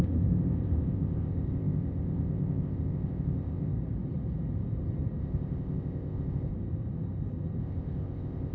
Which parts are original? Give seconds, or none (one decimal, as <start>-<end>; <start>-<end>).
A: 3.7-5.2; 6.5-7.6

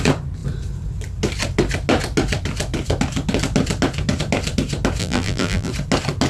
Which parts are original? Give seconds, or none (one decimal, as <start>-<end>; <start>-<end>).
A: 0.0-5.0; 5.7-6.3